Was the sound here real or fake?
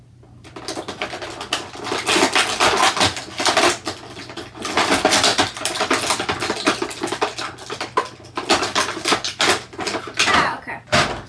real